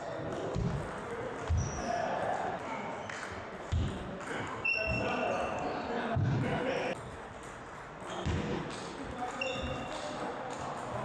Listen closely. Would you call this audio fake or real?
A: real